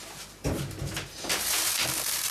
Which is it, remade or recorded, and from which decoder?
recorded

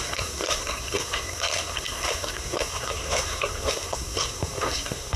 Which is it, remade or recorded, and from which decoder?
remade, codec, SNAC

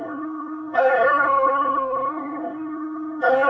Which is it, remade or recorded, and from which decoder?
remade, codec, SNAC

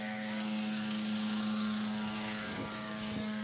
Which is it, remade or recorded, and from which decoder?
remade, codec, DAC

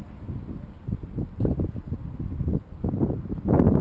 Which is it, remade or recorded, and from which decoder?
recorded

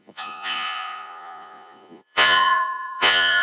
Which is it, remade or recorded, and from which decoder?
remade, vocoder, Vocos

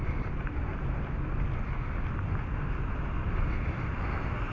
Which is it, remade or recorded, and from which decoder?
recorded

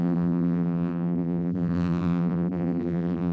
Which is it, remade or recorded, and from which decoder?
remade, vocoder, BigVGAN v2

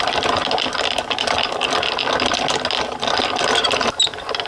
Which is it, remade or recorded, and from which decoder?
recorded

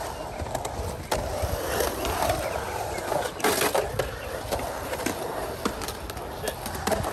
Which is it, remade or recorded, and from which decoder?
recorded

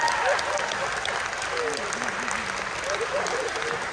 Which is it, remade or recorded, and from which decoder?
recorded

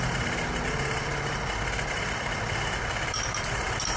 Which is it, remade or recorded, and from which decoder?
recorded